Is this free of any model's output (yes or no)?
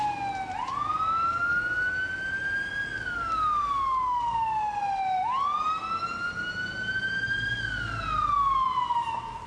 yes